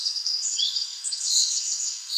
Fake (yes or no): yes